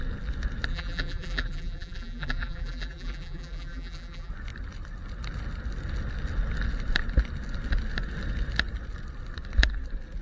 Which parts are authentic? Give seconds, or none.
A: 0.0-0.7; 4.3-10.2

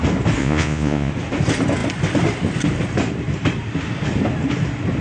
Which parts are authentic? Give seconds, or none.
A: 0.0-0.4; 1.1-5.0

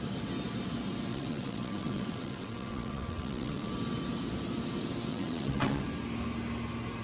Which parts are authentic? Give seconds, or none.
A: 0.0-1.1; 3.7-5.1; 5.8-7.0

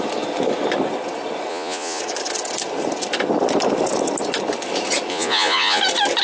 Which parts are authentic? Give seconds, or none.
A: 0.0-1.5; 2.0-5.1; 5.8-6.2